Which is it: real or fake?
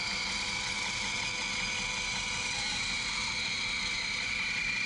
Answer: real